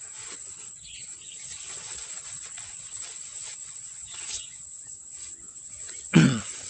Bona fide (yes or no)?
no